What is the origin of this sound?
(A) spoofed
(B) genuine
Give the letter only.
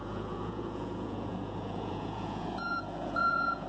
A